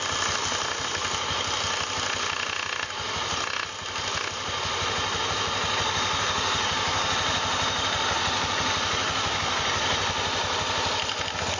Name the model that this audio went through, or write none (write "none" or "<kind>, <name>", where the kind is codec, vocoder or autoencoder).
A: none